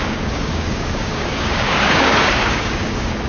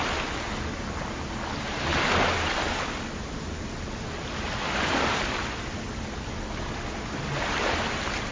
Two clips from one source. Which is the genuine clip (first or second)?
second